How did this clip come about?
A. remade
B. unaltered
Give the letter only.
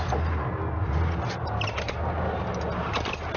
B